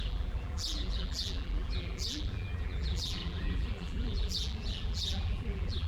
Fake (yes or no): yes